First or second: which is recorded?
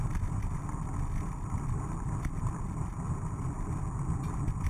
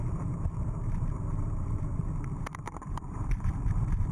first